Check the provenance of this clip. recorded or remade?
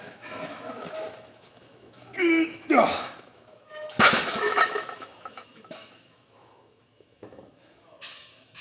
remade